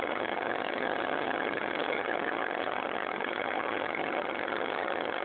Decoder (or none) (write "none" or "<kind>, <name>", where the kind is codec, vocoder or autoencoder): vocoder, HiFi-GAN